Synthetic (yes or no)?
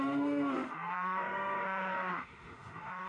yes